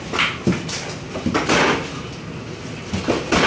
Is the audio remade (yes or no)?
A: no